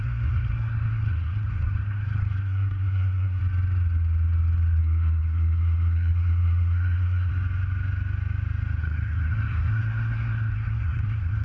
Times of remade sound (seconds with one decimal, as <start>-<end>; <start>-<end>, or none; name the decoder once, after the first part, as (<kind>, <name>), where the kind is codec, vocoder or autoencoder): 0.0-3.4 (codec, SNAC); 4.8-7.3; 8.8-11.4